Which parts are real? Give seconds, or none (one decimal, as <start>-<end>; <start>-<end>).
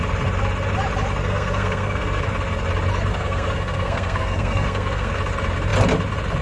0.0-1.2; 2.2-3.1; 5.1-6.4